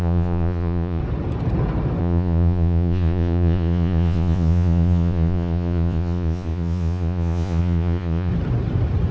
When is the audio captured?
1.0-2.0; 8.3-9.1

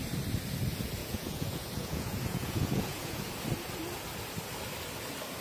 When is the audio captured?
0.0-1.0; 3.4-5.4